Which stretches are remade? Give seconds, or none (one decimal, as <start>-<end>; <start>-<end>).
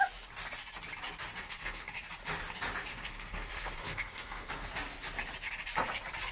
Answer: 1.4-1.9; 2.9-4.7